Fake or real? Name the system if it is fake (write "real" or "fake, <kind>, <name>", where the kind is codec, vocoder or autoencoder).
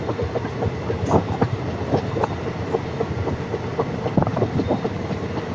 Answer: real